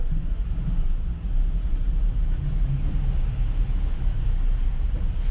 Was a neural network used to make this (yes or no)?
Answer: yes